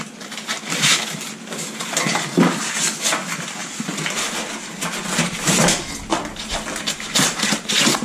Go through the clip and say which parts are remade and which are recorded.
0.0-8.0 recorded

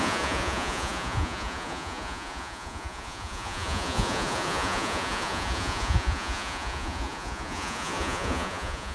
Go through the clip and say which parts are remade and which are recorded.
0.0-8.9 remade

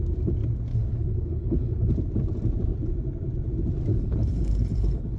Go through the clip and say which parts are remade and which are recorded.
0.0-0.7 recorded; 0.7-1.9 remade; 1.9-3.9 recorded; 3.9-5.2 remade

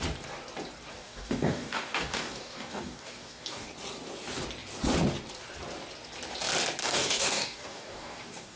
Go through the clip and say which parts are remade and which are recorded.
0.0-0.9 recorded; 0.9-3.7 remade; 3.7-6.8 recorded; 6.8-8.6 remade

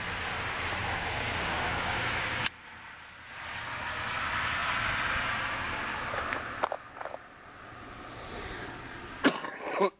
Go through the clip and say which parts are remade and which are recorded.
0.0-0.8 recorded; 0.8-2.4 remade; 2.4-10.0 recorded